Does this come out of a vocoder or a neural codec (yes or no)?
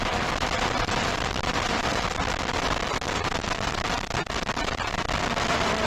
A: no